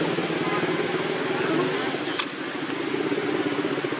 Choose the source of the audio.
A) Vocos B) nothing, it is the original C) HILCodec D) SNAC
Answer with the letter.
B